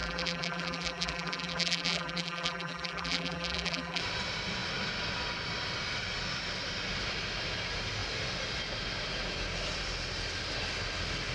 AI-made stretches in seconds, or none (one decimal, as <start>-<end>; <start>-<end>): 0.0-4.0